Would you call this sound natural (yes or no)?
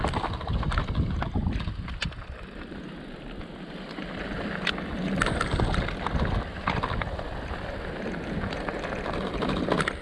yes